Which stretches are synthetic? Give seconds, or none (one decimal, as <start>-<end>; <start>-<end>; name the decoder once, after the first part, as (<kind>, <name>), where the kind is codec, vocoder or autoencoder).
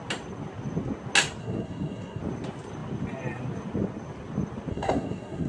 1.4-2.2 (codec, SNAC); 4.7-5.5